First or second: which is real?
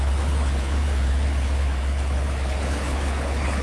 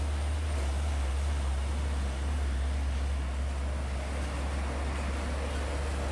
second